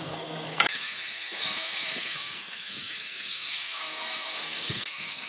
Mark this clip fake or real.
fake